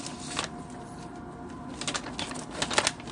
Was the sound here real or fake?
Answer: real